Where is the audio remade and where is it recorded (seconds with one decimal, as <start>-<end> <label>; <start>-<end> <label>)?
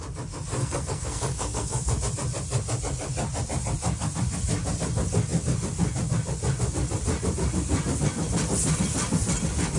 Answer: 0.0-0.6 recorded; 0.6-2.0 remade; 2.0-9.8 recorded